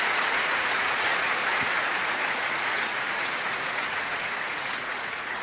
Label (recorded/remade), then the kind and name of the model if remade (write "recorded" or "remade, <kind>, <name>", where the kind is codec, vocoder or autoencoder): remade, vocoder, Vocos